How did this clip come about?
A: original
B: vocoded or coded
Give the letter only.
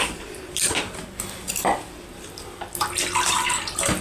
B